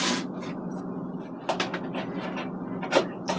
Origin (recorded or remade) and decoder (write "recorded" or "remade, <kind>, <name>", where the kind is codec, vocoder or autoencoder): recorded